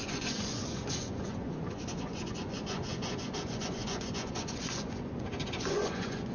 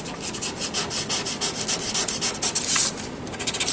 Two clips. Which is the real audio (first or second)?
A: second